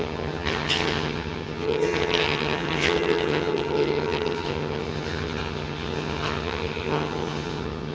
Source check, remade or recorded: remade